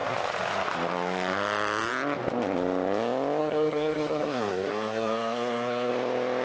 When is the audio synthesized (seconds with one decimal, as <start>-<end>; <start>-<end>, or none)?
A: 3.4-5.9